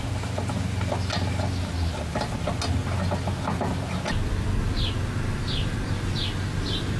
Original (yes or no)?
yes